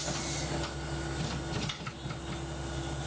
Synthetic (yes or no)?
no